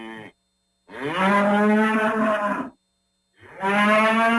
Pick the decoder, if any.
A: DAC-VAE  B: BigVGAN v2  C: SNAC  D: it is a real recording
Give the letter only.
D